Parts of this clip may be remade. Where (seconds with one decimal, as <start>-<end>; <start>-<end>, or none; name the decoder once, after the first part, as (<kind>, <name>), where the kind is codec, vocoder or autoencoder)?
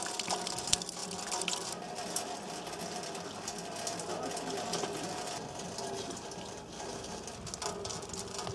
none